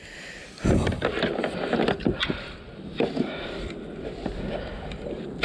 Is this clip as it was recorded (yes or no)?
yes